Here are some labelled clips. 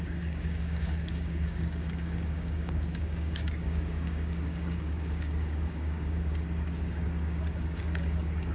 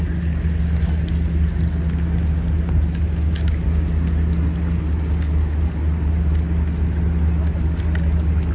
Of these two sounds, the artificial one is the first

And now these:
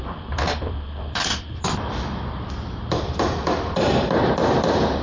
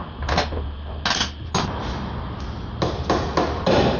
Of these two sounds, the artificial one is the first